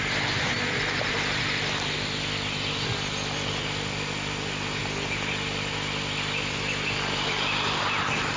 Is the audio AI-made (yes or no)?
no